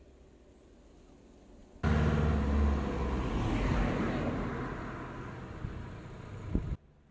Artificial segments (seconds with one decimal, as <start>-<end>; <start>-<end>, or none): none